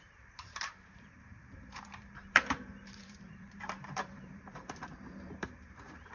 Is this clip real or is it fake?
fake